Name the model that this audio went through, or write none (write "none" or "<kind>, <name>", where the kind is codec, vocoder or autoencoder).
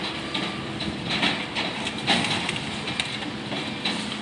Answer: vocoder, BigVGAN v2